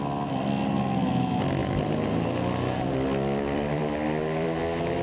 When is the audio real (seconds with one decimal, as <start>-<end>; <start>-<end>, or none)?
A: 0.0-1.6; 4.6-5.0